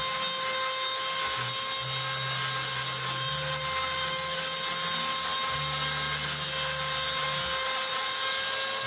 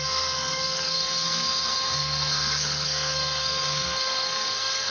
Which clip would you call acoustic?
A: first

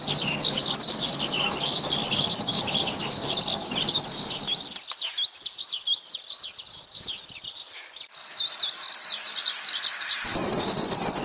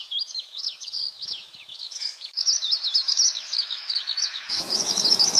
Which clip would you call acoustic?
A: first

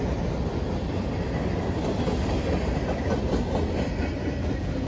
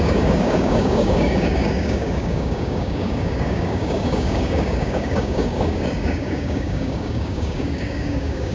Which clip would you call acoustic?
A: first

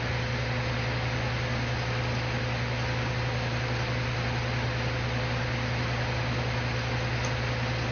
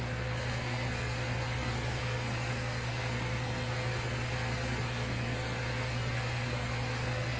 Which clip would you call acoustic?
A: first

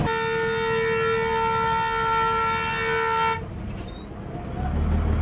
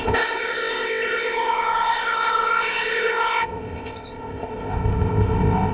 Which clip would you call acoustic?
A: first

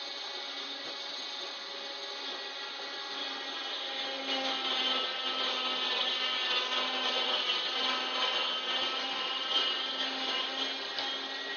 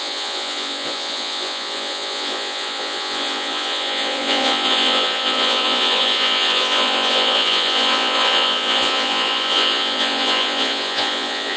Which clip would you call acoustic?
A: first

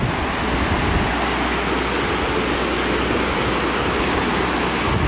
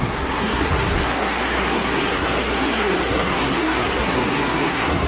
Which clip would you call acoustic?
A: first